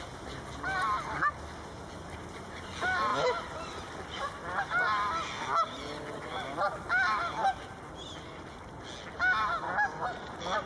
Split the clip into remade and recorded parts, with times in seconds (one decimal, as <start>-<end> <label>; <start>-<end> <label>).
0.0-10.7 recorded